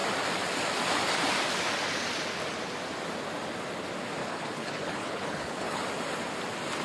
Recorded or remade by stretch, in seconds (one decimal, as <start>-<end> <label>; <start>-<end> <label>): 0.0-4.2 recorded; 4.2-5.8 remade; 5.8-6.8 recorded